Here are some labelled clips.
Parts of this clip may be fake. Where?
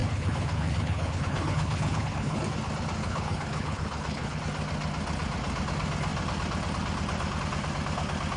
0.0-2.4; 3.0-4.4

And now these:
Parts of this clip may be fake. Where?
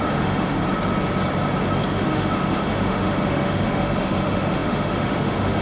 0.0-0.6; 1.9-5.6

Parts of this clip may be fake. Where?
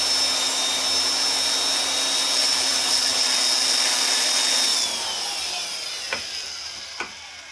2.7-3.3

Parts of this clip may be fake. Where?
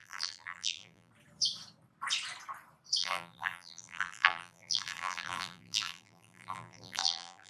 0.0-1.1; 3.0-7.5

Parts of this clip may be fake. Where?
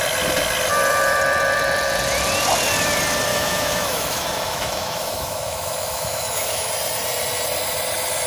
3.3-6.7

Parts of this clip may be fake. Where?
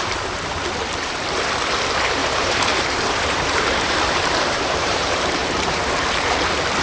2.2-5.9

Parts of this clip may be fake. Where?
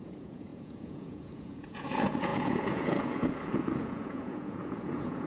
0.0-5.3